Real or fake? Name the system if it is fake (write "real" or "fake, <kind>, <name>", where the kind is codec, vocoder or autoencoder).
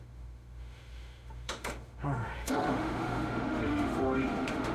fake, autoencoder, DAC-VAE